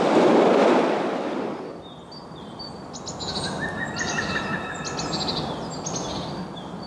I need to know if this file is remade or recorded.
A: recorded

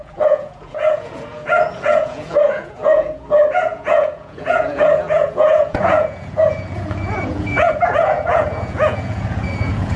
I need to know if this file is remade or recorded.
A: remade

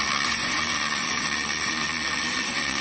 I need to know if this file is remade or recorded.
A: remade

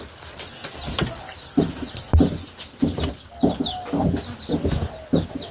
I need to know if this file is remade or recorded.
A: recorded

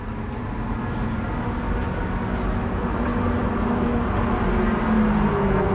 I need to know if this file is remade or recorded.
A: recorded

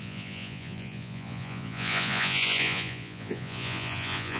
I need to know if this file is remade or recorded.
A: remade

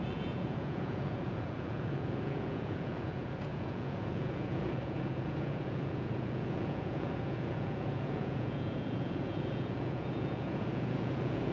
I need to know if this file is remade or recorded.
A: remade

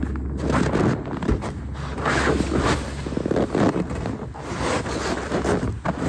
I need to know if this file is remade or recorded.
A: recorded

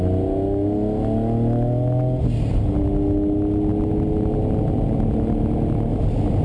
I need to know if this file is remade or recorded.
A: recorded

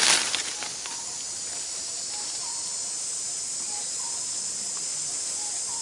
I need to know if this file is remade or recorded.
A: recorded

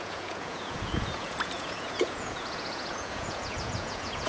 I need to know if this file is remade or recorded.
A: remade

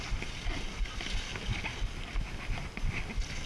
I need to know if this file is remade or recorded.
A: recorded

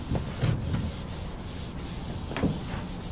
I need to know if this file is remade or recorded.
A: recorded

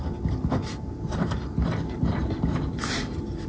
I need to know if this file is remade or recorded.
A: recorded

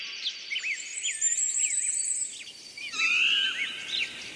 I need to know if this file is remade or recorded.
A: recorded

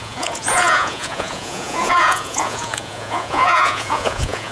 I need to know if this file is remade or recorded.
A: remade